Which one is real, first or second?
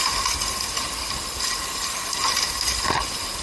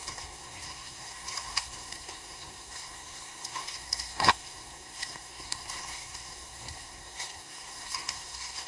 first